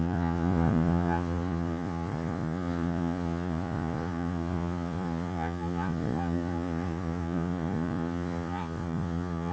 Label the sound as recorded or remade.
remade